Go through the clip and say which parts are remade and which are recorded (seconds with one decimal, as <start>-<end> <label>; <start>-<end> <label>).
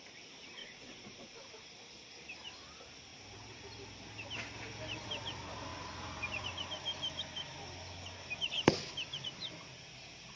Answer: 0.0-0.6 recorded; 0.6-1.4 remade; 1.4-10.4 recorded